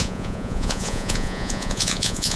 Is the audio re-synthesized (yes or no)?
yes